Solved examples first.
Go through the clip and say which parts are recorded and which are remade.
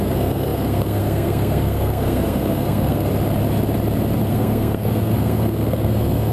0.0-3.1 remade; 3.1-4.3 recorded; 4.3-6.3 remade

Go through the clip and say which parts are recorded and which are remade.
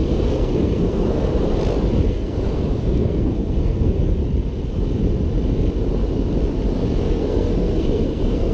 0.0-1.3 remade; 1.3-2.1 recorded; 2.1-4.2 remade; 4.2-7.1 recorded; 7.1-8.5 remade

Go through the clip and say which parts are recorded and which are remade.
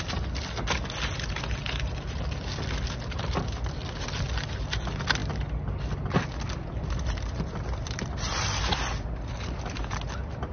0.0-10.5 recorded